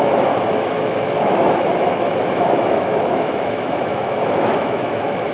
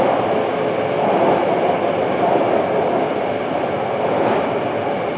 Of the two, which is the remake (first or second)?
first